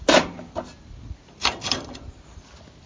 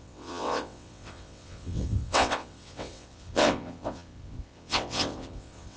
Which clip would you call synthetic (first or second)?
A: second